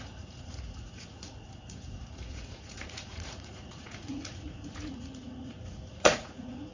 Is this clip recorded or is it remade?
remade